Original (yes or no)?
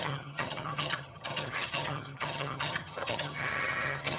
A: no